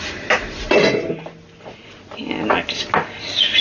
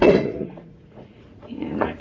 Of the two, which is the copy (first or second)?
second